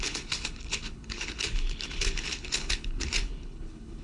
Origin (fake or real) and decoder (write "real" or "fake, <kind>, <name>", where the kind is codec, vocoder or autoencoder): fake, codec, HILCodec